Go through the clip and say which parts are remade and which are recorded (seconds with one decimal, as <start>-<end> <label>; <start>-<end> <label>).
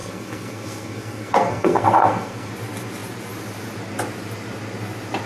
0.0-2.5 remade; 2.5-5.3 recorded